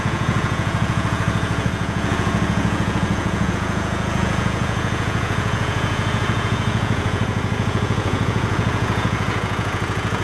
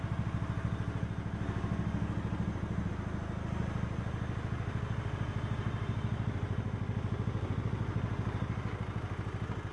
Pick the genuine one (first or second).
second